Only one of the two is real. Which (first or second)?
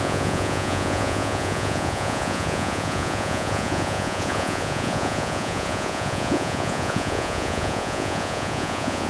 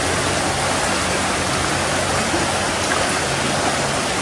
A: second